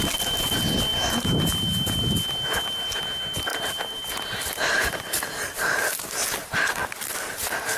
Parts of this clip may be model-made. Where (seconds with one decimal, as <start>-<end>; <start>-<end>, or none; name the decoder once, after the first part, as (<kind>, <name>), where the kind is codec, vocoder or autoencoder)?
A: 3.5-6.1 (vocoder, BigVGAN v2)